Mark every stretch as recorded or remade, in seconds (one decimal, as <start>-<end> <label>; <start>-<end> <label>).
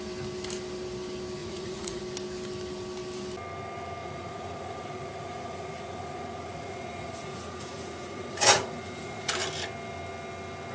0.0-1.4 recorded; 1.4-2.0 remade; 2.0-4.0 recorded; 4.0-9.3 remade; 9.3-10.7 recorded